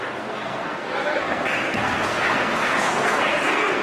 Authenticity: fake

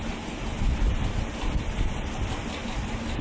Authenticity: real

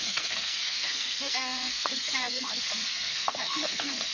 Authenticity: fake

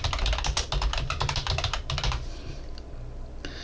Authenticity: real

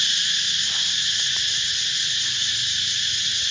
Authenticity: fake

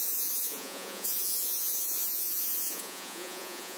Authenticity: fake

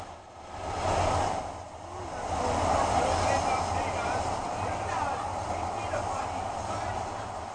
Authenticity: real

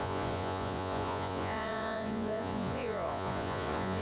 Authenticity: fake